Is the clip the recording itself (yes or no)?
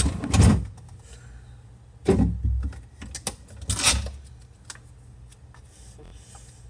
yes